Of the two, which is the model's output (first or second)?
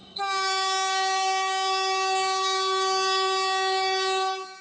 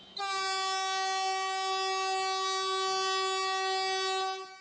first